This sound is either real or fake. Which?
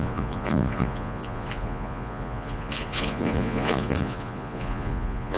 fake